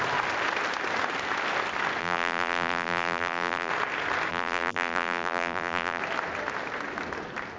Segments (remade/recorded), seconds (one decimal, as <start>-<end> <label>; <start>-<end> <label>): 0.0-2.0 recorded; 2.0-3.7 remade; 3.7-4.3 recorded; 4.3-6.0 remade; 6.0-7.6 recorded